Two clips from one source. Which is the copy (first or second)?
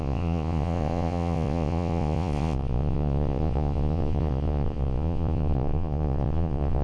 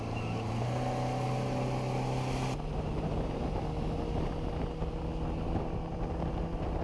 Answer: first